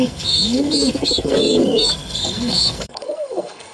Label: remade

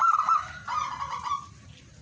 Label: recorded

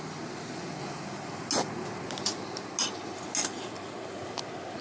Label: recorded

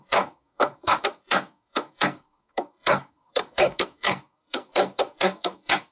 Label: remade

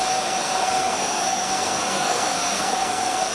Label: remade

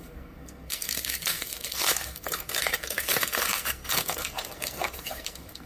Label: remade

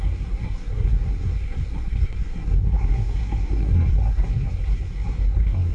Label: remade